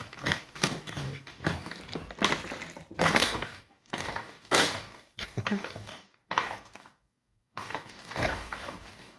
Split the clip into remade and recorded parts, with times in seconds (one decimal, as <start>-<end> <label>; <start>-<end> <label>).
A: 0.0-1.8 remade; 1.8-3.0 recorded; 3.0-9.2 remade